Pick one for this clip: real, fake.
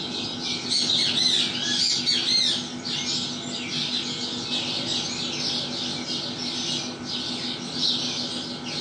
real